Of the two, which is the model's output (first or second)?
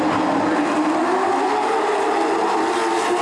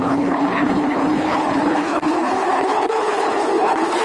second